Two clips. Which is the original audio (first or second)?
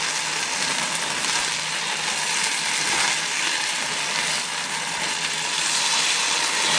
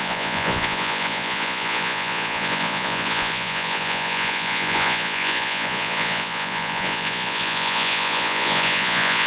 first